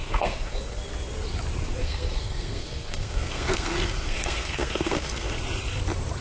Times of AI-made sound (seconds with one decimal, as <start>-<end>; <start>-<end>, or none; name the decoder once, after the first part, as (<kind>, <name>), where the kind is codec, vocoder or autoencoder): 0.0-0.6 (codec, SNAC); 1.8-5.3